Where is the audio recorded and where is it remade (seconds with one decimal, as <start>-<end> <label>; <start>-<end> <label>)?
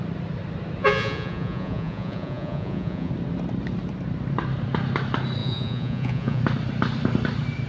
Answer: 0.0-0.8 recorded; 0.8-3.1 remade; 3.1-5.4 recorded; 5.4-6.4 remade; 6.4-7.7 recorded